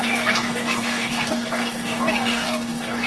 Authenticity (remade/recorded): remade